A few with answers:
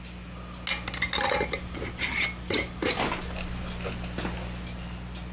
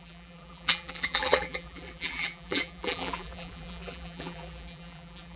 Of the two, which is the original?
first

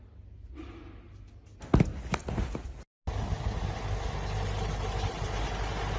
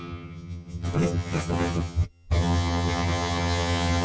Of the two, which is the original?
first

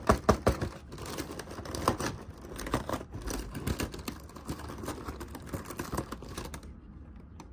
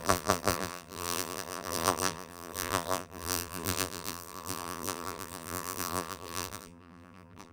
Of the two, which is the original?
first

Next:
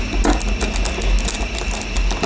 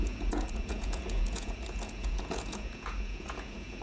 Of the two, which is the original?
first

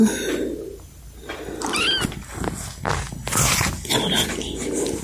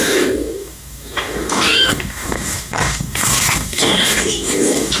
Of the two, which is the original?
first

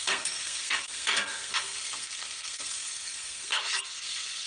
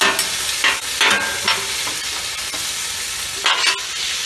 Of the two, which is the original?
second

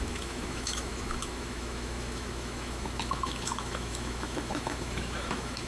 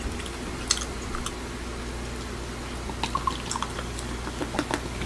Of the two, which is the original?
second